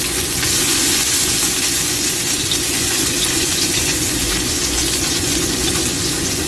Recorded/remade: remade